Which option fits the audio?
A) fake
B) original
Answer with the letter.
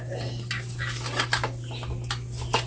B